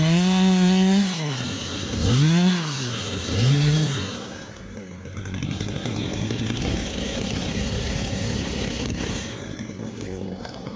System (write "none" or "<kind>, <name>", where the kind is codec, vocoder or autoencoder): codec, SNAC